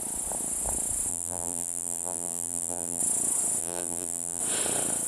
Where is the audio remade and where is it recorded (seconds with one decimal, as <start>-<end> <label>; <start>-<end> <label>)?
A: 0.0-1.1 recorded; 1.1-3.0 remade; 3.0-3.6 recorded; 3.6-4.4 remade; 4.4-5.1 recorded